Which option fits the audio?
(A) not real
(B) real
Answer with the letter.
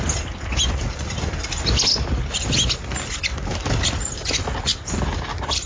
B